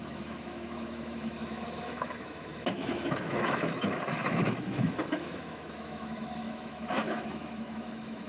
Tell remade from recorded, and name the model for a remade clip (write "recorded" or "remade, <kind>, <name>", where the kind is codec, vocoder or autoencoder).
remade, autoencoder, DAC-VAE